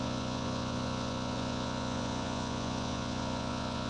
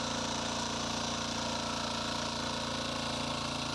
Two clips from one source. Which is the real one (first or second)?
second